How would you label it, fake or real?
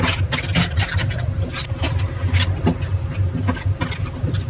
real